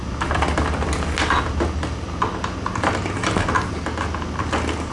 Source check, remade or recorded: recorded